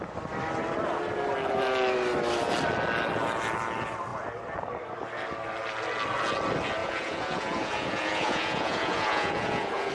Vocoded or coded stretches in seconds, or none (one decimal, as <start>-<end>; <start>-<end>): 6.8-9.9